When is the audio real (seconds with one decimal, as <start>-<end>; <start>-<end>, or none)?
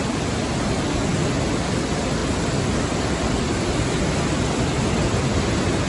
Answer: 0.0-5.9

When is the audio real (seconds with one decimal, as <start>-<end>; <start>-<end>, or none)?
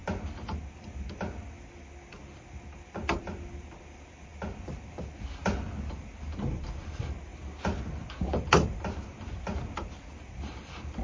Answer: 0.0-3.2; 7.3-8.2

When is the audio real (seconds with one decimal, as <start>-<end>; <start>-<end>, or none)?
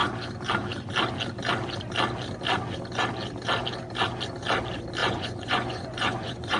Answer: 0.0-5.0